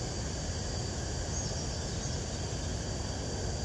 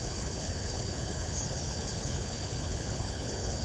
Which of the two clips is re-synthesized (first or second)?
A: second